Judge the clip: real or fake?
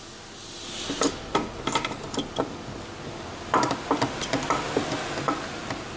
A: real